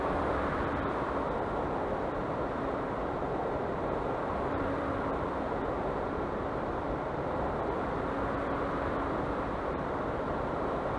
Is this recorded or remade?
remade